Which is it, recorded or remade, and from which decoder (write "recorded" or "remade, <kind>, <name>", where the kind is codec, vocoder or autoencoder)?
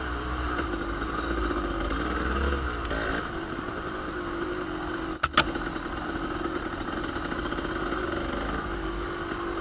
recorded